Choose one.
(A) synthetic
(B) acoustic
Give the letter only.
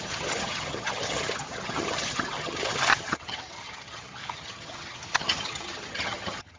A